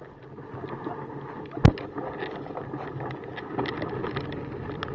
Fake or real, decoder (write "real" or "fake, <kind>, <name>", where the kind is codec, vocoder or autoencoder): real